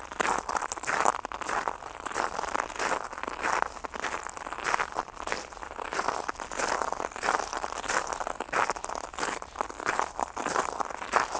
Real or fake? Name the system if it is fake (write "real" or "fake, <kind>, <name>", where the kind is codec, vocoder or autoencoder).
real